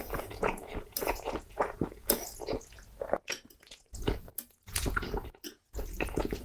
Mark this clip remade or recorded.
remade